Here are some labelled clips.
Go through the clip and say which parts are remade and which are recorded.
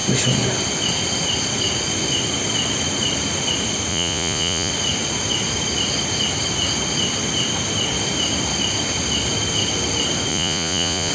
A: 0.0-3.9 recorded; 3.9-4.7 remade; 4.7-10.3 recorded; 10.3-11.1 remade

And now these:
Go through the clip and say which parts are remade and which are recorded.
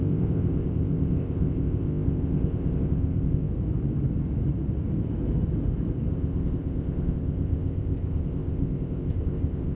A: 0.0-3.5 remade; 3.5-6.1 recorded; 6.1-9.7 remade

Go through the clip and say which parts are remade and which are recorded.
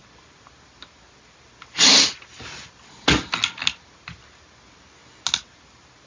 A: 0.0-6.1 recorded